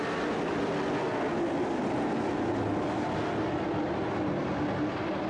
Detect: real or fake real